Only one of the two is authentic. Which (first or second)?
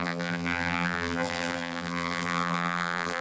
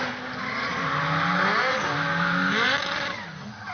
second